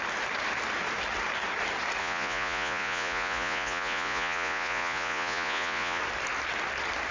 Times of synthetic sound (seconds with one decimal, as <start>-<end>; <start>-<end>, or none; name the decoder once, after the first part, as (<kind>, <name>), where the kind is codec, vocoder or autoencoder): 2.0-6.0 (vocoder, Vocos)